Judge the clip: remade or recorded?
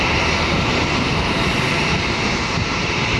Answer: remade